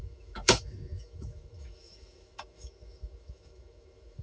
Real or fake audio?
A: fake